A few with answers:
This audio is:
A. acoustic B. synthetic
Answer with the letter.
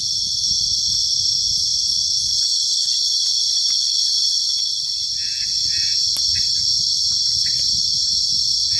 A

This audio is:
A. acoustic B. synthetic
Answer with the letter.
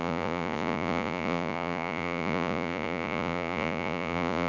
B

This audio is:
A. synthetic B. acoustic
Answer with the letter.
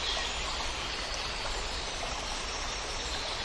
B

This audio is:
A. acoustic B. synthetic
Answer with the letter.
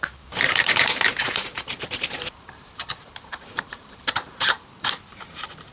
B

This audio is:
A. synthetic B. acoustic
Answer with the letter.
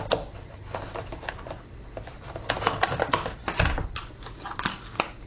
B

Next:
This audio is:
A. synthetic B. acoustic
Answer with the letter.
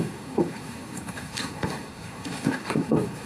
A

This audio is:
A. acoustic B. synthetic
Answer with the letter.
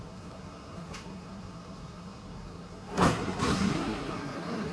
B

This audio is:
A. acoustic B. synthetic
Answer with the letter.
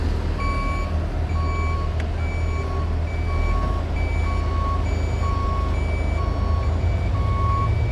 A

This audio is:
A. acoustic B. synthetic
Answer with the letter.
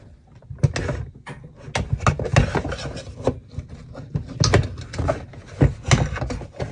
A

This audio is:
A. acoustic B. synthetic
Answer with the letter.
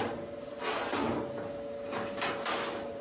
A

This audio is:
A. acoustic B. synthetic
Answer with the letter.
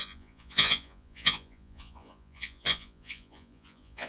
B